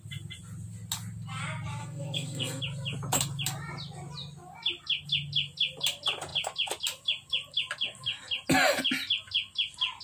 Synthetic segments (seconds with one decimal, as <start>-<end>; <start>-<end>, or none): 1.8-2.6